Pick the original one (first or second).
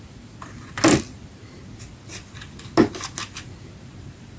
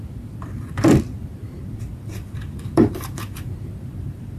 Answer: first